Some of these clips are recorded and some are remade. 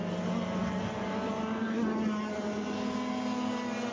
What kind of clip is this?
recorded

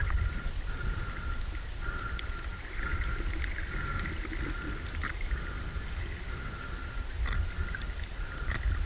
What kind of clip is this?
recorded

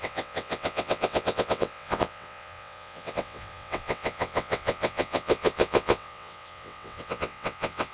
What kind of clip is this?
remade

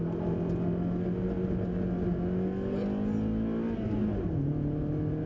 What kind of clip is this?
recorded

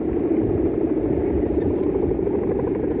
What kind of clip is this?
recorded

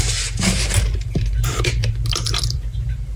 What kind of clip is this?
remade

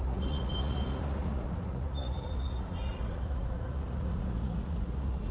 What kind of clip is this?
remade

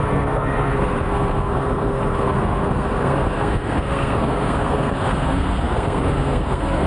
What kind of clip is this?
remade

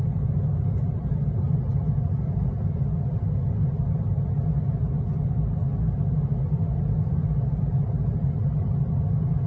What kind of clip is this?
recorded